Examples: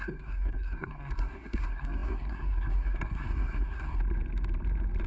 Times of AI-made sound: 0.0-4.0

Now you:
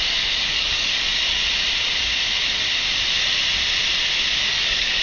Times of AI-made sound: 0.0-1.4; 4.4-5.0

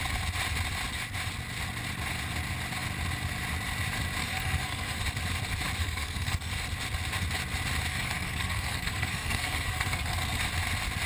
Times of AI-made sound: 4.2-5.0; 5.8-6.5; 7.9-10.4

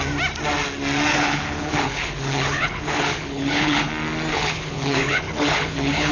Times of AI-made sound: 1.1-3.9; 4.3-6.1

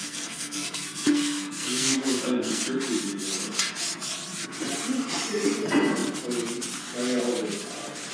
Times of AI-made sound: 0.0-2.6